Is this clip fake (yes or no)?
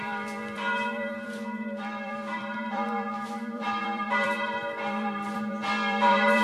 yes